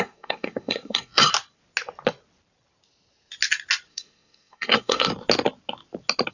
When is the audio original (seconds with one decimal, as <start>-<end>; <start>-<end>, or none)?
1.3-3.9; 5.1-6.3